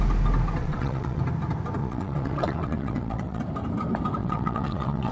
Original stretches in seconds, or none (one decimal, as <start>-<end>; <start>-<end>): 0.0-0.6; 1.2-1.8; 3.4-4.2